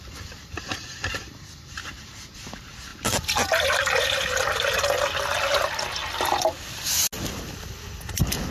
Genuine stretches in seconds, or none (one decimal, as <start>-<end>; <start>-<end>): 0.0-8.5